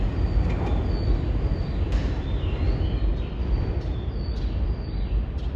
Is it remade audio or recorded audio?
recorded